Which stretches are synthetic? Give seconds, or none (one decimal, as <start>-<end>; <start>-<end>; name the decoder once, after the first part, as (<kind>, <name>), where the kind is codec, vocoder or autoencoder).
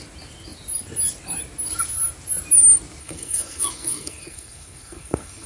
3.0-5.5 (codec, SNAC)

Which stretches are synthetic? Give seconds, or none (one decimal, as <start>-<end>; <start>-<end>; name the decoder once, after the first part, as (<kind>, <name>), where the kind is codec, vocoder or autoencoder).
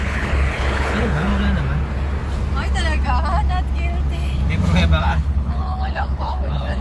0.0-1.3 (codec, HILCodec); 5.0-6.8